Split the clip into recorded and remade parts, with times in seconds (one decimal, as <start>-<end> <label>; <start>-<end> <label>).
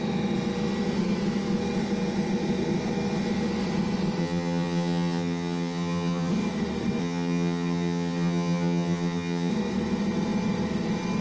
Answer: 0.0-4.2 recorded; 4.2-6.3 remade; 6.3-7.0 recorded; 7.0-9.5 remade; 9.5-11.2 recorded